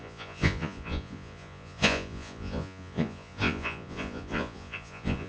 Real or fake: fake